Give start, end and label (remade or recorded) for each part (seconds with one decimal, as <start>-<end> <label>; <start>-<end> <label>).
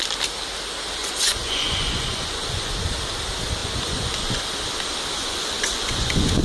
0.0-1.0 recorded; 1.0-2.7 remade; 2.7-3.6 recorded; 3.6-4.4 remade; 4.4-5.2 recorded; 5.2-6.4 remade